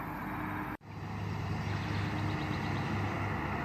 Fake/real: real